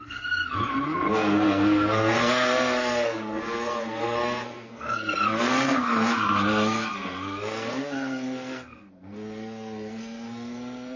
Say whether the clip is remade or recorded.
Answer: remade